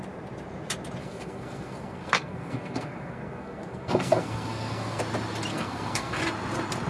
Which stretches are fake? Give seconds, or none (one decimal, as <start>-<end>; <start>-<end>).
1.0-5.0; 5.5-6.2